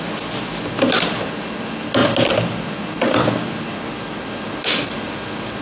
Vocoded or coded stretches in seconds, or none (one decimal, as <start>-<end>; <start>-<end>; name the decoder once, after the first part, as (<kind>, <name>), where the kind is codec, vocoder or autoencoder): none